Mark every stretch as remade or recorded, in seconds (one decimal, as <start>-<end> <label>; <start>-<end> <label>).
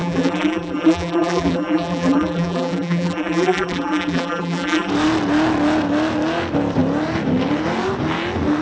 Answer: 0.0-4.9 remade; 4.9-8.6 recorded